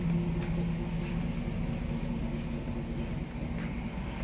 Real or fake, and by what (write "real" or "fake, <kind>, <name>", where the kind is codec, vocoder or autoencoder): real